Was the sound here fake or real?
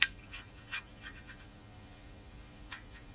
fake